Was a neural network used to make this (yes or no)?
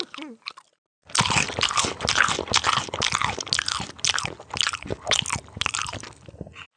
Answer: no